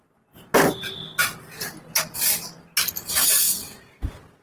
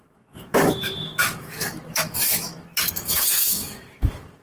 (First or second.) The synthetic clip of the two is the second